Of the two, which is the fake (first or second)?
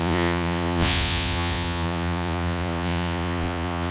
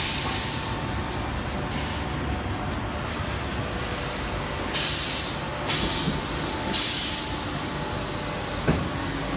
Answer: first